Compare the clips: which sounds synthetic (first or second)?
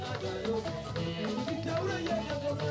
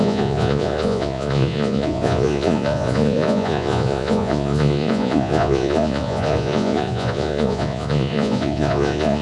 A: second